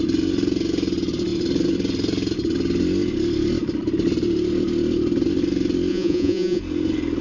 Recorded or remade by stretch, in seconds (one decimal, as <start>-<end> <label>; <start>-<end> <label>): 0.0-5.9 recorded; 5.9-6.6 remade; 6.6-7.2 recorded